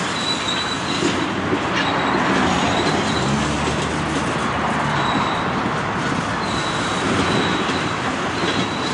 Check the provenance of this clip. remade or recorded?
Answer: recorded